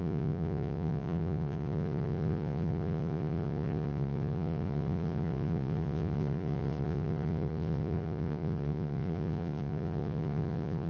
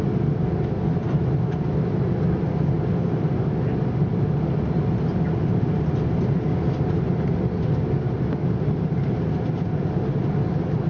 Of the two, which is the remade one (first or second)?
first